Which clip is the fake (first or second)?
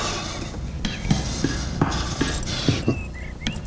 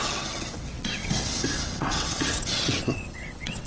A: second